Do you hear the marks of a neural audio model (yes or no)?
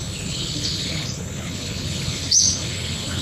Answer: yes